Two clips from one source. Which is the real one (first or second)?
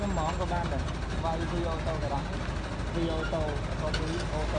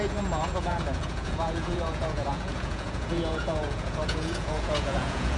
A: first